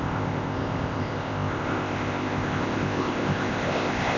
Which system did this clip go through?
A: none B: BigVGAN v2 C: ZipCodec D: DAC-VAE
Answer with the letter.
C